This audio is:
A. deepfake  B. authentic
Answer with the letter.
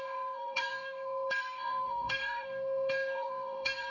A